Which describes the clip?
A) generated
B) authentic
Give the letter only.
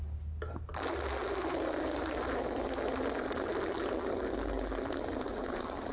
B